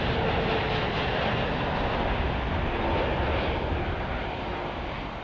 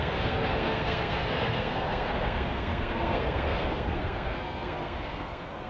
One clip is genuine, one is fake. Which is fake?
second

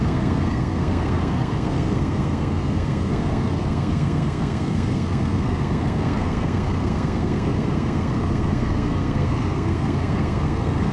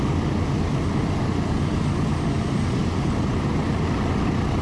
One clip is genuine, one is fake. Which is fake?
first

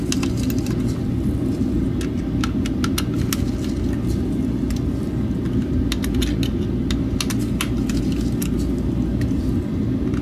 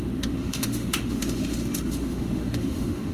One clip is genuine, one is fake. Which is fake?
second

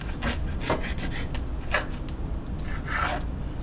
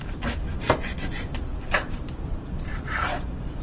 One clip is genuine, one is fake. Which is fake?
second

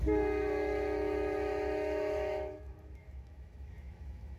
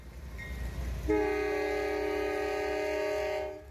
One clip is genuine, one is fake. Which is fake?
first